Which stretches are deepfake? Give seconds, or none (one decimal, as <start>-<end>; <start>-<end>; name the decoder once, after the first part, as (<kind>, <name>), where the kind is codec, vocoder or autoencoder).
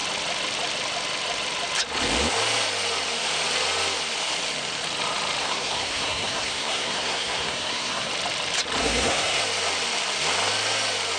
5.4-8.1 (codec, SNAC); 8.8-9.4